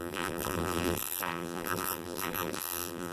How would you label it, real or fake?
fake